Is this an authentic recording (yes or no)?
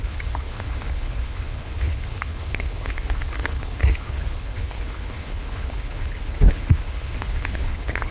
no